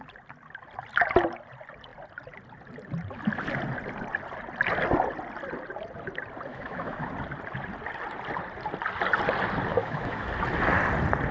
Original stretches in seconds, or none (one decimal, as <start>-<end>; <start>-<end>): 0.0-6.5; 7.1-9.7; 10.3-11.3